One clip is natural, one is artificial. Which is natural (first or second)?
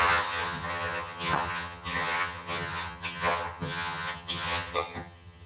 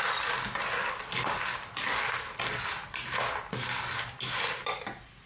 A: second